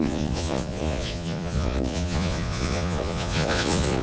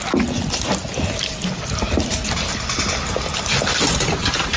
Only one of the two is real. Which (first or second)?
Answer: second